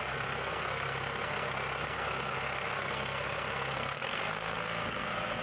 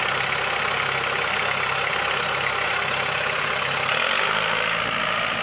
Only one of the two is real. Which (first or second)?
second